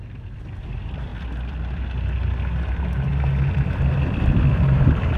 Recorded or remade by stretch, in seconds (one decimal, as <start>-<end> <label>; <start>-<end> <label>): 0.0-1.1 remade; 1.1-2.7 recorded; 2.7-3.1 remade; 3.1-4.5 recorded; 4.5-5.2 remade